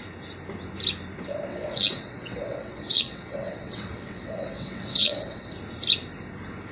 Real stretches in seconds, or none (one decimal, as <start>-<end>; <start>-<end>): 0.0-1.5; 5.5-6.7